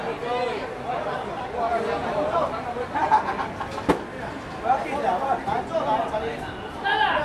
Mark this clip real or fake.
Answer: real